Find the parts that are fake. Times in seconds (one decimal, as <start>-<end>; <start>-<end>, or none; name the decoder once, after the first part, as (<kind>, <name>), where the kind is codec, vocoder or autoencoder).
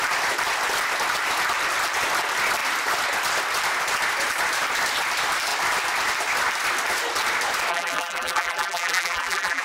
7.7-9.6 (vocoder, BigVGAN v2)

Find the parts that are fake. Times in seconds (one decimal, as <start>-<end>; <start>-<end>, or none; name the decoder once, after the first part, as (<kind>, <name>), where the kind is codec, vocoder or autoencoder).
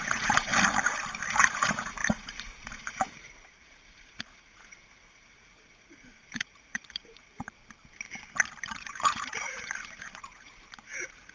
0.0-0.5 (vocoder, Vocos); 1.3-7.6; 8.7-11.3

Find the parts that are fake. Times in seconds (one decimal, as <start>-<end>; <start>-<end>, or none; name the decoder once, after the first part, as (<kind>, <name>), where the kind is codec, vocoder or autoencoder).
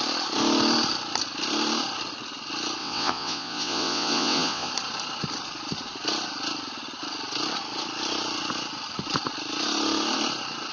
2.8-4.7 (vocoder, WaveNeXt)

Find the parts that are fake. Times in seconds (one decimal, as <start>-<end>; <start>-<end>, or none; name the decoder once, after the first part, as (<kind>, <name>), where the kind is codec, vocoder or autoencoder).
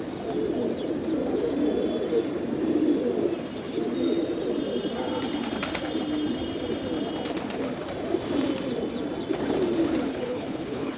10.1-11.0 (codec, HILCodec)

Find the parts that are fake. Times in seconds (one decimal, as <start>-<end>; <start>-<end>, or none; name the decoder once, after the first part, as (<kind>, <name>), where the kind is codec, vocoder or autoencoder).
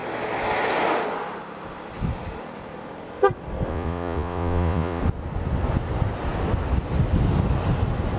3.7-5.0 (vocoder, Vocos)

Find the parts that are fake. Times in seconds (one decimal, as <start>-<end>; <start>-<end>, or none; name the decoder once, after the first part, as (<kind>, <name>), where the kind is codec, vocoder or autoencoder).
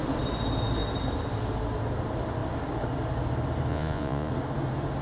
3.7-4.3 (vocoder, Vocos)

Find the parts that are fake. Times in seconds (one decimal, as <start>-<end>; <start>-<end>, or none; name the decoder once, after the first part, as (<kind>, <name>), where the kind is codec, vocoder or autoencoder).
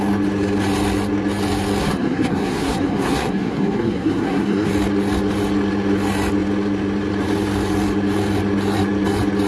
1.8-4.7 (codec, SNAC)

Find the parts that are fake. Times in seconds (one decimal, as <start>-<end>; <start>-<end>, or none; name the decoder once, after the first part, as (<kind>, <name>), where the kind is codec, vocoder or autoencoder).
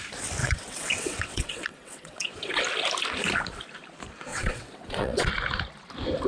0.4-2.6 (vocoder, WaveNeXt); 4.3-5.3